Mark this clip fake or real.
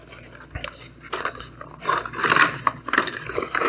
real